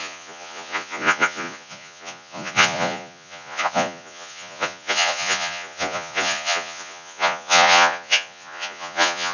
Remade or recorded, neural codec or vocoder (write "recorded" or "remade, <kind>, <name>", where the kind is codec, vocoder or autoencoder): remade, vocoder, Vocos